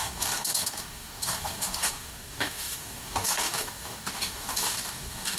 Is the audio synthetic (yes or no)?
yes